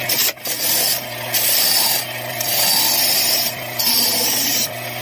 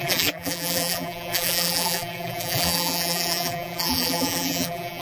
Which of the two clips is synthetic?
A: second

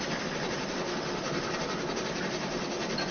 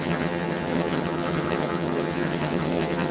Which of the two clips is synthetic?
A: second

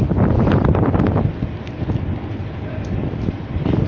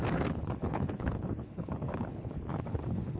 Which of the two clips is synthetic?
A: second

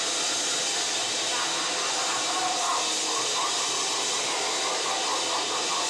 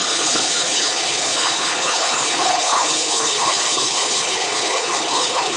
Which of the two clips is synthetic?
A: second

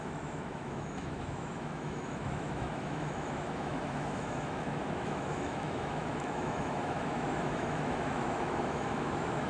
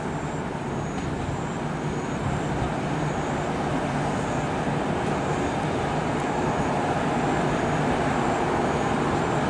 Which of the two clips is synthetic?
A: first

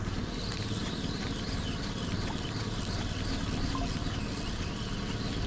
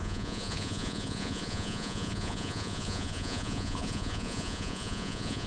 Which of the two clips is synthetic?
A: second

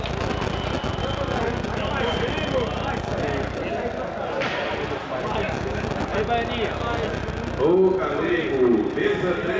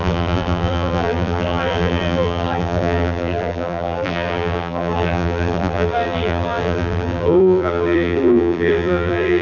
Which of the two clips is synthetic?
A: second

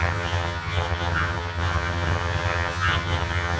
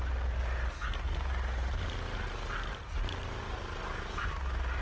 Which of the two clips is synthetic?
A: first